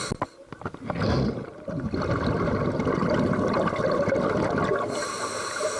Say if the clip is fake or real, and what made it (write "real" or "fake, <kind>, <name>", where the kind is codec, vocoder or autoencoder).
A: real